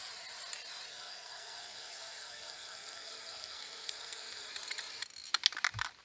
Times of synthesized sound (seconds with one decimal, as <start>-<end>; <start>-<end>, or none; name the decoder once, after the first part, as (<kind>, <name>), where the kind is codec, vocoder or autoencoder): 0.9-4.5 (codec, SNAC)